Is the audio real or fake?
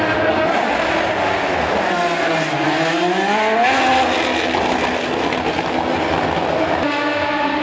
real